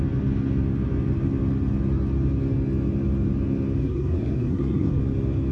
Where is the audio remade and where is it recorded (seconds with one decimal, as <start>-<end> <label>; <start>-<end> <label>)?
0.0-3.8 recorded; 3.8-5.0 remade; 5.0-5.5 recorded